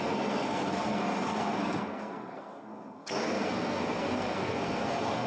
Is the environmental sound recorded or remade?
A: remade